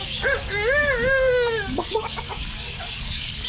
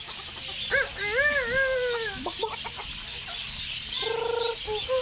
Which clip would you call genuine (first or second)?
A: second